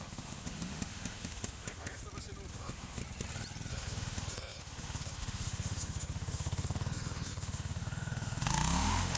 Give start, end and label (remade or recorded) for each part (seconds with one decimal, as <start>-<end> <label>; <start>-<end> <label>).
0.0-2.0 remade; 2.0-2.5 recorded; 2.5-3.0 remade; 3.0-3.7 recorded; 3.7-9.2 remade